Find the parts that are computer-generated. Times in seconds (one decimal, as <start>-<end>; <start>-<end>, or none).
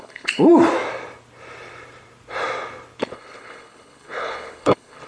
0.0-0.5; 3.0-5.1